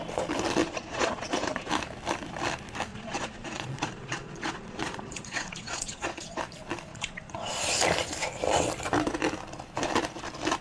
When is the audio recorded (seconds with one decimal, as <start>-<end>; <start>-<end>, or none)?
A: 0.0-0.6; 1.7-2.9; 6.4-6.9; 7.5-10.6

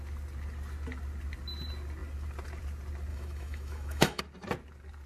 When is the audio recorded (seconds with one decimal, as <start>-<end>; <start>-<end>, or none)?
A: 0.0-3.1; 4.2-5.1

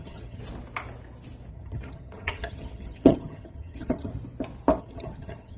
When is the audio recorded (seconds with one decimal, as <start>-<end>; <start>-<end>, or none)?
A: 0.4-1.5; 4.1-4.8

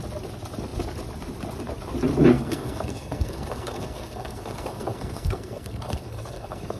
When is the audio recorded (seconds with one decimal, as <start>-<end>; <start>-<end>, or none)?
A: 0.0-2.3

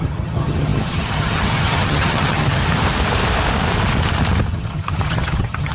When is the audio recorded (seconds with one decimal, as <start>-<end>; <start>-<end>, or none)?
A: 2.6-4.5